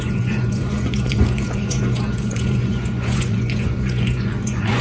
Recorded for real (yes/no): no